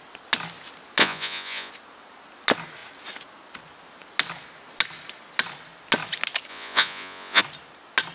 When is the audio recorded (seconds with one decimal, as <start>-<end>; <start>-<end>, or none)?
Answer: 0.0-1.0; 1.7-6.5; 7.4-8.1